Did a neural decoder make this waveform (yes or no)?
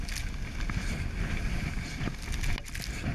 no